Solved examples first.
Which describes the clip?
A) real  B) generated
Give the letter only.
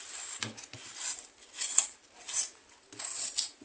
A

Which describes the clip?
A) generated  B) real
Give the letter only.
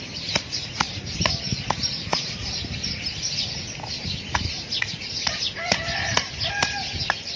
B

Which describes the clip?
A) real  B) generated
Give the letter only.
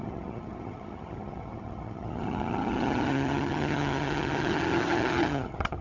B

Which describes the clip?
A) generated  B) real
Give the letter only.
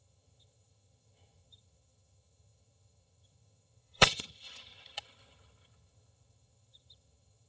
A